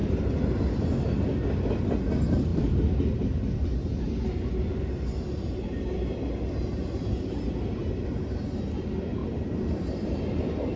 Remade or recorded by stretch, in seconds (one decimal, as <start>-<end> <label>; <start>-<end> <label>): 0.0-10.8 recorded